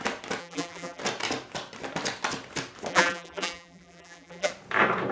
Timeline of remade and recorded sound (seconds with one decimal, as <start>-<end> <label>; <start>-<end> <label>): 0.0-0.4 recorded; 0.4-1.0 remade; 1.0-2.9 recorded; 2.9-4.5 remade; 4.5-5.1 recorded